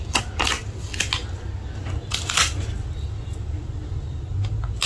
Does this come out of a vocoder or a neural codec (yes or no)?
no